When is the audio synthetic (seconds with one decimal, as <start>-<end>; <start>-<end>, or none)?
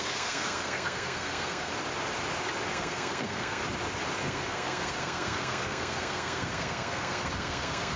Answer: 0.0-1.7; 2.7-3.6; 4.2-8.0